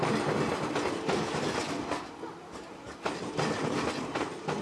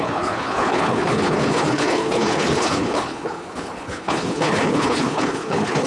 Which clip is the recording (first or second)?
first